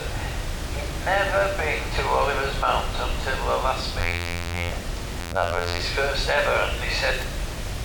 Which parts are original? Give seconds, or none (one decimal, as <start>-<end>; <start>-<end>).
0.0-4.0; 4.7-5.2; 5.8-7.8